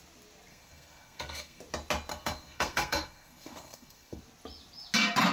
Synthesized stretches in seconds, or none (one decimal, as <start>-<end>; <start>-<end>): 0.5-1.6; 2.1-4.2